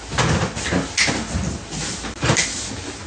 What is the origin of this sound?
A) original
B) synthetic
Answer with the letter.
A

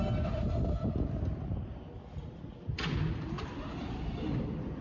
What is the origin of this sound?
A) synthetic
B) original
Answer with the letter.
B